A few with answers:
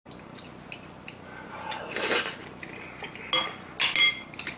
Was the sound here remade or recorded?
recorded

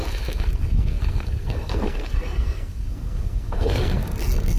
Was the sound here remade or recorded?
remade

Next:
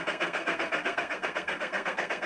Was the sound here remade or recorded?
remade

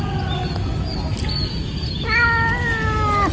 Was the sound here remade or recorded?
recorded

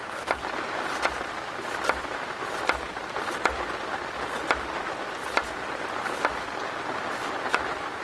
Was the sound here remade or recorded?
recorded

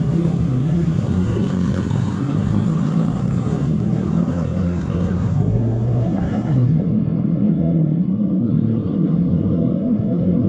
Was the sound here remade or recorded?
remade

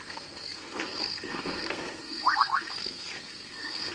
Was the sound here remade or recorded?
remade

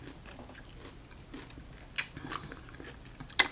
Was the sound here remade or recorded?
recorded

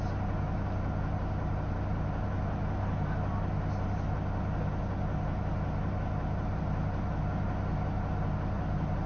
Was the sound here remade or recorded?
recorded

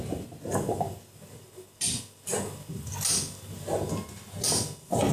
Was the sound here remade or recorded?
recorded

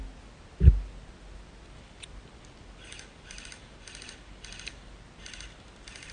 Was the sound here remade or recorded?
recorded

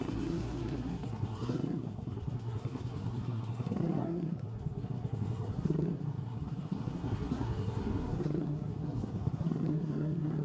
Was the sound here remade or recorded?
remade